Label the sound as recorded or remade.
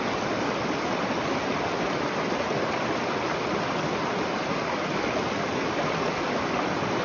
recorded